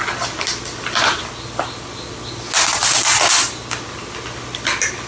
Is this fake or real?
real